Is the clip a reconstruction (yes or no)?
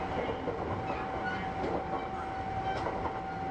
no